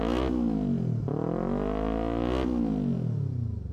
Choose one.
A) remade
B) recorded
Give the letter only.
B